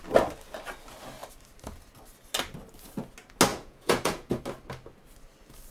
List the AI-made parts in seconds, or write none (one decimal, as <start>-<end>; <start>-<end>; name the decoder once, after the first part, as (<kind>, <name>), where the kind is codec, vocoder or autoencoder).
3.5-4.4 (vocoder, Vocos)